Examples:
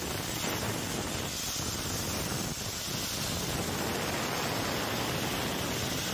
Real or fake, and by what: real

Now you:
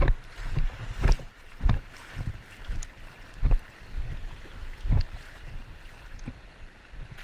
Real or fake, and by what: real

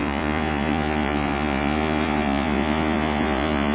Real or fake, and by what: fake, vocoder, Vocos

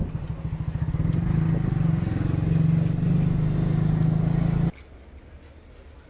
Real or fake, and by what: real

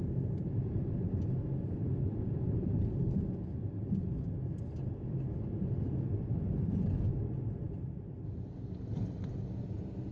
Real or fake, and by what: real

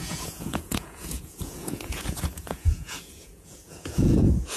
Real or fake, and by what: fake, vocoder, Vocos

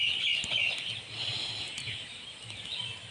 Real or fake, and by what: real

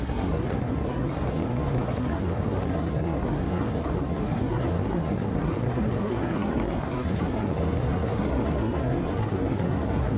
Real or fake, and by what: fake, codec, SNAC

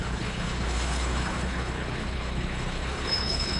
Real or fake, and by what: fake, codec, HILCodec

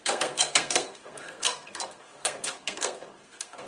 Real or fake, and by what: fake, codec, SNAC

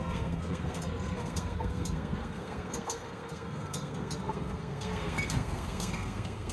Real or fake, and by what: fake, codec, SNAC